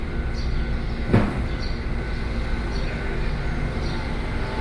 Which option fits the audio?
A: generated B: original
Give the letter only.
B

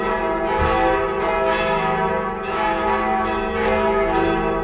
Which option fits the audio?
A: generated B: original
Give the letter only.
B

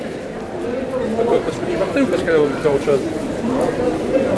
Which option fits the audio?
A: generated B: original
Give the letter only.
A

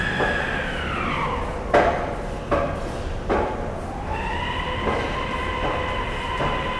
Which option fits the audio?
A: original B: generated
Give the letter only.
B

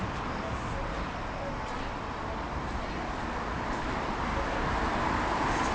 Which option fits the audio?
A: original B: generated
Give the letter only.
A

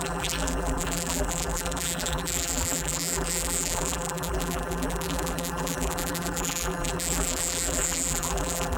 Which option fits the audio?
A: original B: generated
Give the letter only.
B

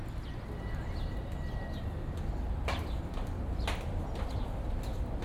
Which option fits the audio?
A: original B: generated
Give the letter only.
A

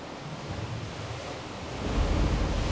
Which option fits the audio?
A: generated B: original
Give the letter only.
B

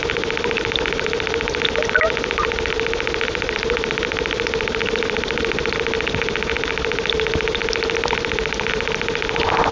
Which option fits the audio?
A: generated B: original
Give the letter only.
B